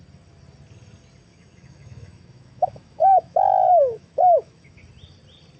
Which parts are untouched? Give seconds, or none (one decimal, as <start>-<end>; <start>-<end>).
0.0-1.3; 4.7-5.6